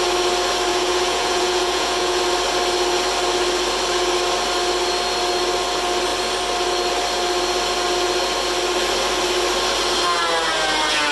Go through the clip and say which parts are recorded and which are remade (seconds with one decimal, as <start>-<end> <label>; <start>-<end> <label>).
0.0-0.7 recorded; 0.7-2.2 remade; 2.2-11.1 recorded